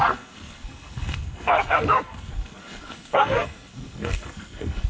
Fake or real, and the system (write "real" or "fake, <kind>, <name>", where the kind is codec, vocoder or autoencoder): fake, codec, SNAC